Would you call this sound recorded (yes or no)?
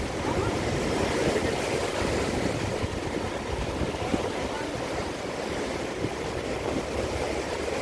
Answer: yes